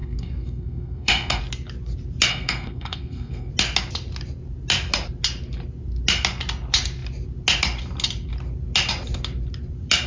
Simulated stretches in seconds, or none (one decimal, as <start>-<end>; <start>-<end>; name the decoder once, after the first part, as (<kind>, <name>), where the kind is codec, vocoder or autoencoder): 0.0-1.4 (codec, SNAC); 2.3-3.5